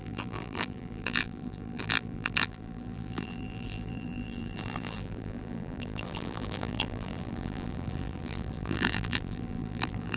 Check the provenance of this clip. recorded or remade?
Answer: remade